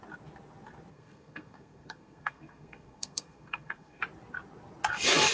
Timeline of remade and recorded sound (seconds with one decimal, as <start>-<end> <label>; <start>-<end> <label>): 0.0-0.9 recorded; 0.9-4.0 remade; 4.0-5.3 recorded